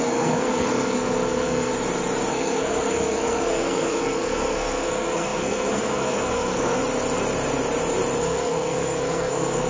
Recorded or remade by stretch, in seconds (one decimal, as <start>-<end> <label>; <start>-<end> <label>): 0.0-1.7 remade; 1.7-2.3 recorded; 2.3-6.8 remade; 6.8-8.2 recorded; 8.2-9.7 remade